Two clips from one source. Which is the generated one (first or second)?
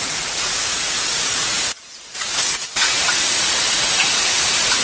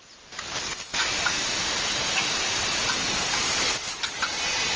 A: first